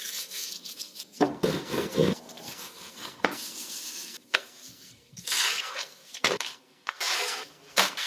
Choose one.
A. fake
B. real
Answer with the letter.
A